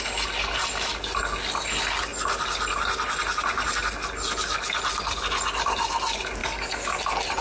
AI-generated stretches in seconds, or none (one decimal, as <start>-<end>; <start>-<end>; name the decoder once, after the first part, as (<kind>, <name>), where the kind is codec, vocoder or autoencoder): 6.4-7.0 (codec, DAC)